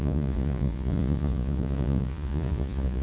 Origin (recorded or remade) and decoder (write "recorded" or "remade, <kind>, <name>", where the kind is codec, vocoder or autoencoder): remade, vocoder, Vocos